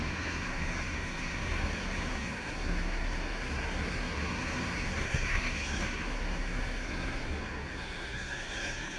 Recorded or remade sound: remade